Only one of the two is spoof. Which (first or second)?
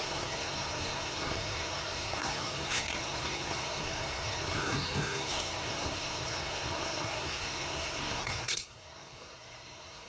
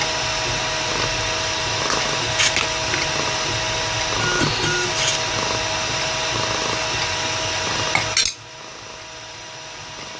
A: first